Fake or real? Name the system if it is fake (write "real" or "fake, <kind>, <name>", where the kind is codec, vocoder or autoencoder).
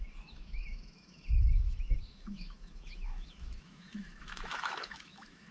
fake, autoencoder, DAC-VAE